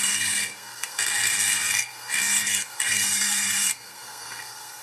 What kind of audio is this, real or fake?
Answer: fake